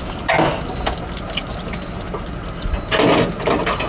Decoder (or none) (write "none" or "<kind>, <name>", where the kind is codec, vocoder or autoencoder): none